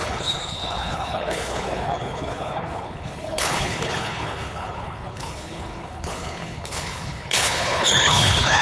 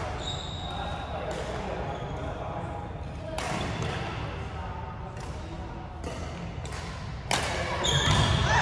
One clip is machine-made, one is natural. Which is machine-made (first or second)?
first